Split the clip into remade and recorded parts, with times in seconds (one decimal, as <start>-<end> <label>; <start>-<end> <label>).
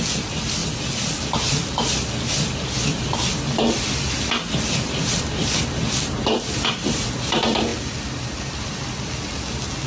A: 0.0-9.9 recorded